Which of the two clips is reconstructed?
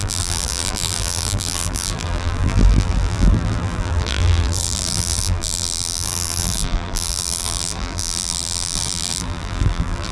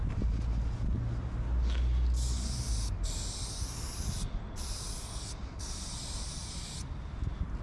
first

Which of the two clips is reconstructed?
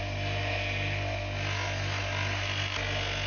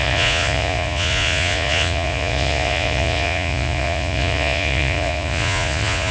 second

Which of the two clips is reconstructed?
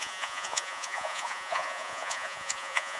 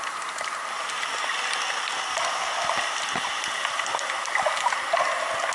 first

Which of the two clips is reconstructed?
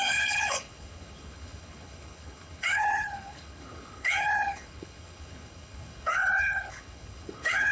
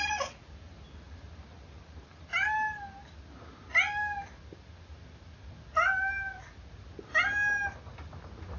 first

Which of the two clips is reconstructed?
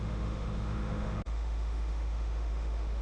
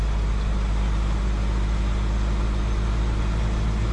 first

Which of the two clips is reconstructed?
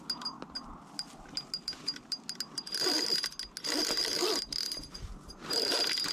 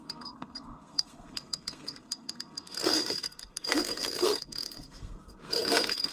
second